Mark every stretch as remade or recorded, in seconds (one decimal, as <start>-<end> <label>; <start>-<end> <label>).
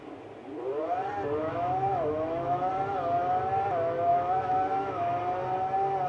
0.0-1.4 recorded; 1.4-2.7 remade; 2.7-4.1 recorded; 4.1-5.2 remade; 5.2-6.1 recorded